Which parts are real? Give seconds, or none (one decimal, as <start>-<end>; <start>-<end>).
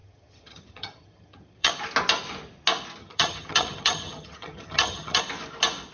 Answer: 1.7-3.0; 5.2-5.9